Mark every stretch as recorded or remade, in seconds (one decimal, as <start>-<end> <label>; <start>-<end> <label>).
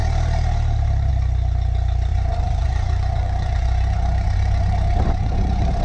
0.0-2.1 recorded; 2.1-5.8 remade